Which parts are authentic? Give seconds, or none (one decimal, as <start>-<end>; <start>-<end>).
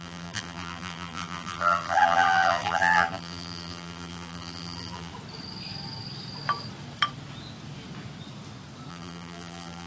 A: 5.1-8.9